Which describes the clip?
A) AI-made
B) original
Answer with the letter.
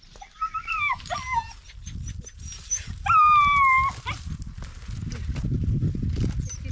B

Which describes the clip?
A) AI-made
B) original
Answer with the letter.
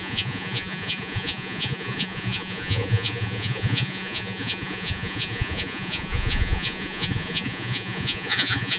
A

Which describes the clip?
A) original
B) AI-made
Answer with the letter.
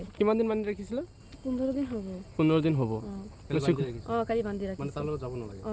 A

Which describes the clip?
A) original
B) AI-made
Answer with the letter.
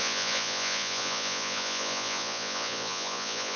B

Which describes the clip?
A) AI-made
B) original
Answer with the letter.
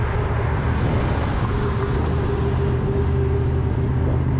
B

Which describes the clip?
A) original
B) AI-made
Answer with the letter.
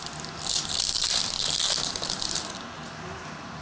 A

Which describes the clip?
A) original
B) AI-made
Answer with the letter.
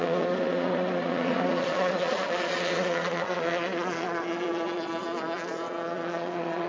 B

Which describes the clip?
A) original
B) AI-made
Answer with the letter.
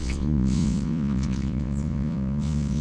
B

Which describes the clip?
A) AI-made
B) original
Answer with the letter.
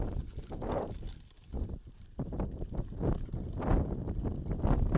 B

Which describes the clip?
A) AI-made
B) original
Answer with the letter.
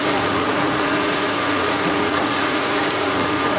A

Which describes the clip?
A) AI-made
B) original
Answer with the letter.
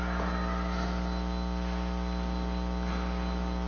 B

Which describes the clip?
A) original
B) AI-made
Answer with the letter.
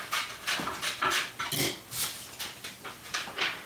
A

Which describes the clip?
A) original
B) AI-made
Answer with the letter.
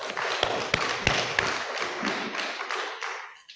A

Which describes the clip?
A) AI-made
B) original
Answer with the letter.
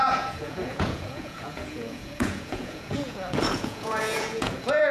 A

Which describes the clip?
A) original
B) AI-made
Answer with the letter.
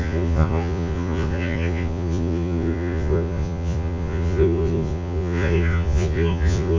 B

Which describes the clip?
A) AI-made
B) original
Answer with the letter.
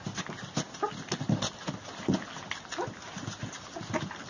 B